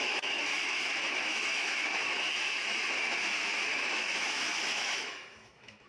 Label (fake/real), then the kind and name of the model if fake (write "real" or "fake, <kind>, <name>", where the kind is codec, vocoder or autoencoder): fake, autoencoder, DAC-VAE